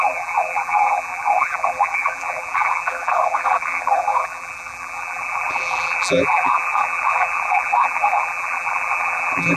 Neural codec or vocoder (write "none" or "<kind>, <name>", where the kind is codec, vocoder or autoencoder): vocoder, BigVGAN v2